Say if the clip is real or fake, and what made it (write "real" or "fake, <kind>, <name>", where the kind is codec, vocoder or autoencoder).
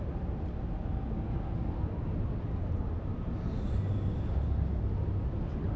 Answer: real